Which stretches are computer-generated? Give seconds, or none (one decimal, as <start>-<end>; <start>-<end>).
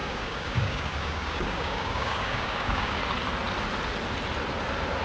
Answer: 0.0-3.0